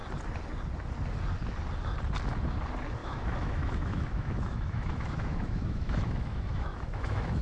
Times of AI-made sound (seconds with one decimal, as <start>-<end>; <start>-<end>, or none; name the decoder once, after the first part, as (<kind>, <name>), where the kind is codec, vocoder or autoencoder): 3.0-7.4 (autoencoder, DAC-VAE)